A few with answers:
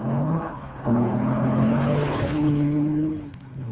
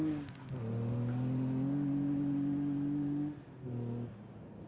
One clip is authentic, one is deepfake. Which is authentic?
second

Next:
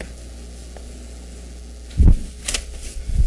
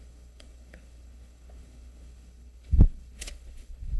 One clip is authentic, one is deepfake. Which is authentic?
first